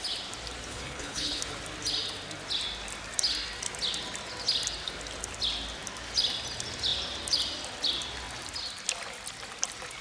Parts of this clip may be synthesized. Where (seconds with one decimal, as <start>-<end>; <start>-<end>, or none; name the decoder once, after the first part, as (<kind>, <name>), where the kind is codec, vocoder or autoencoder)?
0.7-1.4 (codec, HILCodec)